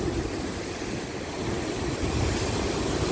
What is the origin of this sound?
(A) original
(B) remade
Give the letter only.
A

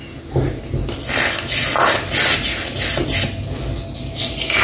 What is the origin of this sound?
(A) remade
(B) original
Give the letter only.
B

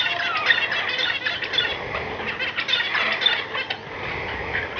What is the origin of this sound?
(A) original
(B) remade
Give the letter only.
A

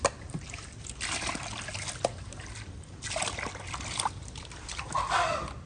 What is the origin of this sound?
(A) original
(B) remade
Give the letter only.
A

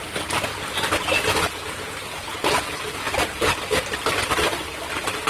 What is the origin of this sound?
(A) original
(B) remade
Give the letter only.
A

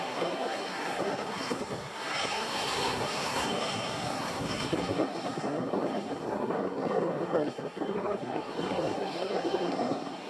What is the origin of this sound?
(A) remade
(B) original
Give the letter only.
A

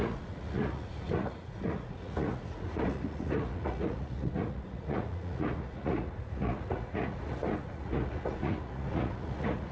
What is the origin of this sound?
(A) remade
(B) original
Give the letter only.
A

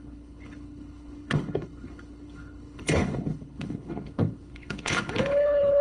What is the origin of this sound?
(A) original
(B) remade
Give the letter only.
B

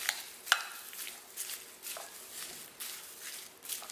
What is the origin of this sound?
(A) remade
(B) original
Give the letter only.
B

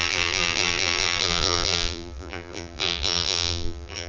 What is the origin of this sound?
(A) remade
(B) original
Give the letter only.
A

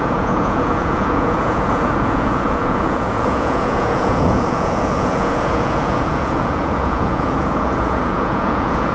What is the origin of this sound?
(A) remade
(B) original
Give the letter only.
A